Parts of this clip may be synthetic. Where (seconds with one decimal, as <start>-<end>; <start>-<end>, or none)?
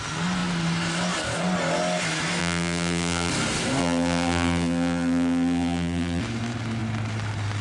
2.4-3.3; 3.8-6.2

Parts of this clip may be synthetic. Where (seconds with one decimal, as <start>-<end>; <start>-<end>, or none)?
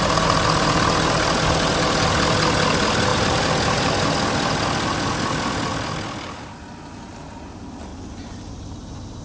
3.1-3.9; 7.9-9.2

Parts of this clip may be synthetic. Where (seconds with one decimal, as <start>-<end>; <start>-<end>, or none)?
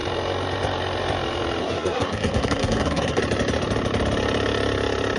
1.6-3.2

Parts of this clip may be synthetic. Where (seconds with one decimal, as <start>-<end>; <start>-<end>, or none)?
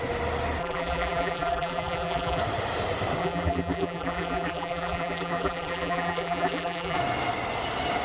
0.6-2.4; 3.2-7.0